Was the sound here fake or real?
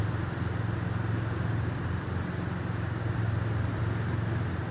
real